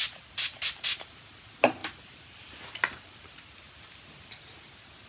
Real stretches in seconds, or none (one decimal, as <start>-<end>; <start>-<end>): 0.0-5.1